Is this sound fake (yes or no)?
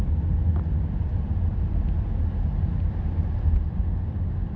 no